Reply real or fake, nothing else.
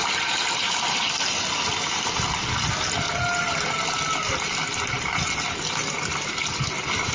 real